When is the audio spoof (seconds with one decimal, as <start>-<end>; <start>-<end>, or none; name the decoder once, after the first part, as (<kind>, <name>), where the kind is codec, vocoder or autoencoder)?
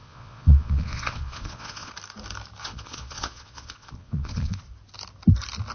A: 0.0-1.9 (vocoder, Vocos); 2.6-4.6